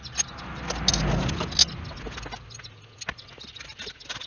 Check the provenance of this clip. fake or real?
real